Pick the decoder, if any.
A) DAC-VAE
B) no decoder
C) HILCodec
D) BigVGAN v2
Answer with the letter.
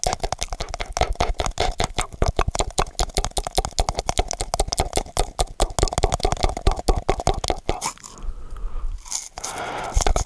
B